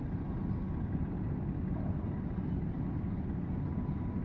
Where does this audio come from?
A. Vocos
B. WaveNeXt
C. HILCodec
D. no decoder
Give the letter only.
D